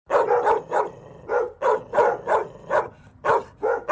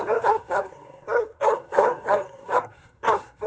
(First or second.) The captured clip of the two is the first